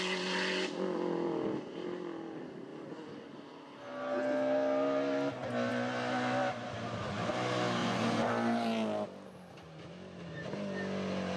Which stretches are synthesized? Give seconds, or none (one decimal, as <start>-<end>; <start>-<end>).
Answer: 7.8-8.3